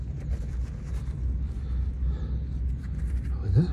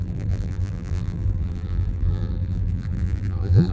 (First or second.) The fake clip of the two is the second